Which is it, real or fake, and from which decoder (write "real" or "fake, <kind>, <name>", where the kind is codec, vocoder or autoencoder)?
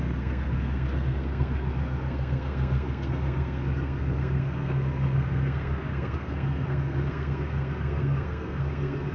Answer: fake, codec, SNAC